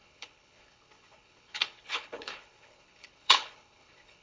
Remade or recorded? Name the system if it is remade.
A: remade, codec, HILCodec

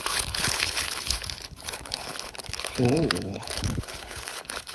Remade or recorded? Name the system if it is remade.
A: remade, codec, HILCodec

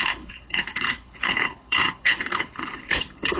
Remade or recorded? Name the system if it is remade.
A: remade, codec, HILCodec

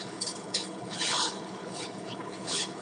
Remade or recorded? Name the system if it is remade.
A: remade, codec, HILCodec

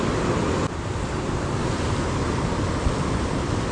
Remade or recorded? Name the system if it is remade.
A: recorded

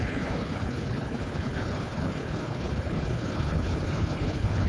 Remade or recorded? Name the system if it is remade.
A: remade, codec, HILCodec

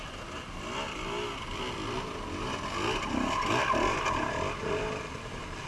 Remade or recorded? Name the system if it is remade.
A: recorded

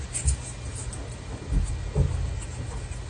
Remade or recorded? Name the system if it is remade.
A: recorded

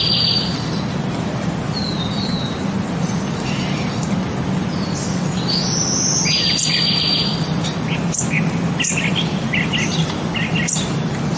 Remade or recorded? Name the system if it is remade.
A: recorded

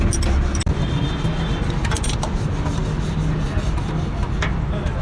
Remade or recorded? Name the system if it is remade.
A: recorded